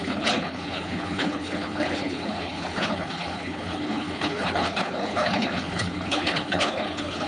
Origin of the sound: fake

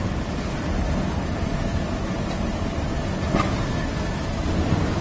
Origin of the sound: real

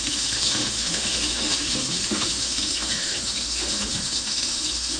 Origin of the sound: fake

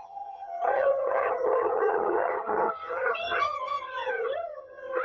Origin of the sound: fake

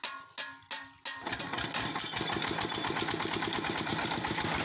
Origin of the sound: real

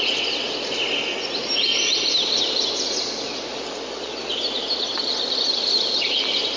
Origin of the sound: fake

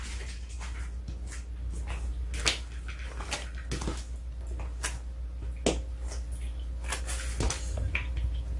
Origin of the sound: real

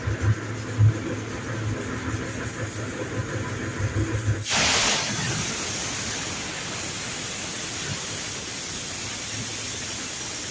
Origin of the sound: real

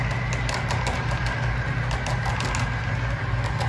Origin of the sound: real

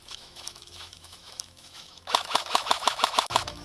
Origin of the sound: fake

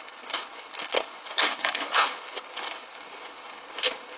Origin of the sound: fake